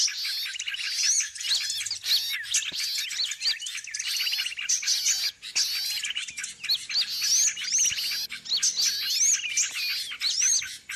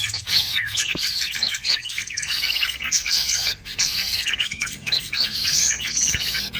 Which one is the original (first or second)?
first